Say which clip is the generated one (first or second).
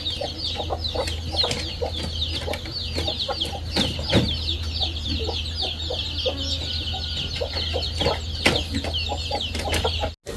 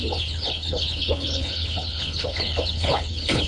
second